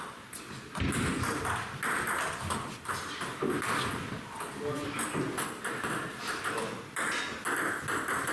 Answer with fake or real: real